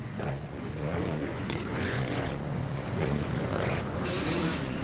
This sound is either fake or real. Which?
fake